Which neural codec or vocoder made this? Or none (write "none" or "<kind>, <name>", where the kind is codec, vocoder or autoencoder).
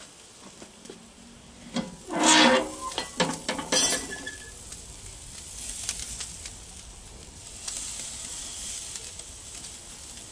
none